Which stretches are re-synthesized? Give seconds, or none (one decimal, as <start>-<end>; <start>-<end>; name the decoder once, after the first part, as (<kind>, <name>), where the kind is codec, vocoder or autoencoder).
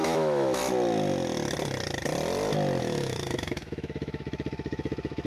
0.0-0.6 (autoencoder, DAC-VAE); 2.8-5.3